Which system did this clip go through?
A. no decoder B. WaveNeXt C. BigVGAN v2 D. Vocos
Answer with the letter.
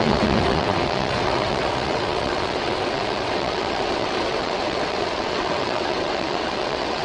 B